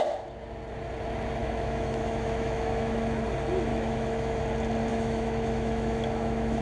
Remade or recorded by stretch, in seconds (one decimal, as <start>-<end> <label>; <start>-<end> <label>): 0.0-1.4 recorded; 1.4-3.2 remade; 3.2-3.7 recorded; 3.7-4.4 remade; 4.4-4.9 recorded; 4.9-6.6 remade